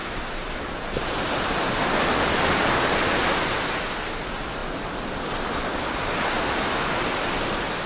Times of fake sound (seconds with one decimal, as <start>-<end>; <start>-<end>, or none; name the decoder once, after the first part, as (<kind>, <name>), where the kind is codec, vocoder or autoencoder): 0.0-1.2 (vocoder, BigVGAN v2)